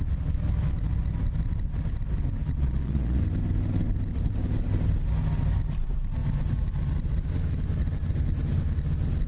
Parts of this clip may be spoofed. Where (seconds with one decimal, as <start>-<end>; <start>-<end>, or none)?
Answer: 2.4-3.2